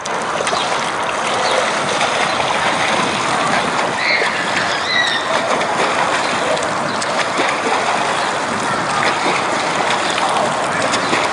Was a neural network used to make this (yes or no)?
no